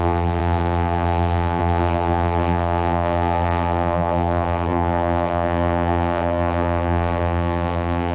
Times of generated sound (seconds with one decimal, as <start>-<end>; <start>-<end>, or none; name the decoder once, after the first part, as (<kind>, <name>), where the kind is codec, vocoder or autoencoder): 0.0-8.1 (vocoder, BigVGAN v2)